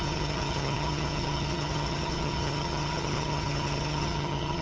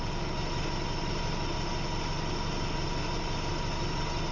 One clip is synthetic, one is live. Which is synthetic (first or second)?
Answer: first